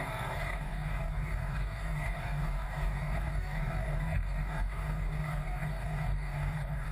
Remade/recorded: remade